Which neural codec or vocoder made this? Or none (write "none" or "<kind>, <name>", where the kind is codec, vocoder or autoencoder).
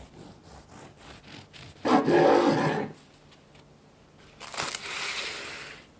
none